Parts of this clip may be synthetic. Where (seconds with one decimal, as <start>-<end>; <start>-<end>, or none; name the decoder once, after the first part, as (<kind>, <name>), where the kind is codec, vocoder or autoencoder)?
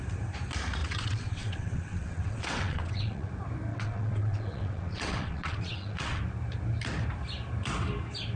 0.8-3.3 (vocoder, WaveNeXt); 3.7-6.2